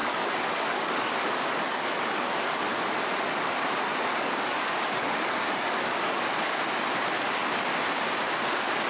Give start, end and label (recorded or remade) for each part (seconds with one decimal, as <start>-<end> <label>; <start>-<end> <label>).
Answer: 0.0-2.8 remade; 2.8-4.1 recorded; 4.1-6.2 remade; 6.2-8.9 recorded